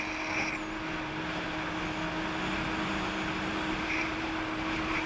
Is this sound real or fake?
real